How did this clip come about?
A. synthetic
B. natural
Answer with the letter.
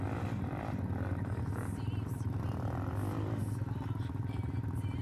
B